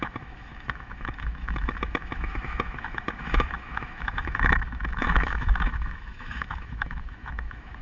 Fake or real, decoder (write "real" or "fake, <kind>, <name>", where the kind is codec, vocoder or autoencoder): fake, autoencoder, DAC-VAE